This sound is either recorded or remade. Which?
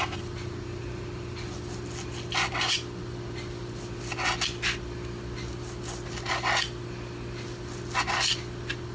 recorded